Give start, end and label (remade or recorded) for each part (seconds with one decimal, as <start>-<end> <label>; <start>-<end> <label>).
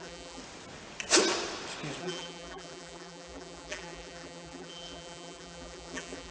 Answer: 0.0-0.4 remade; 0.4-2.0 recorded; 2.0-6.3 remade